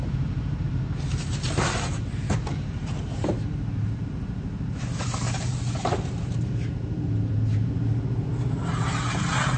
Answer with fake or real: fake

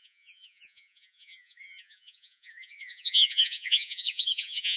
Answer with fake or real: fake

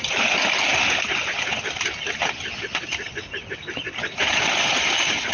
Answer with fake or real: real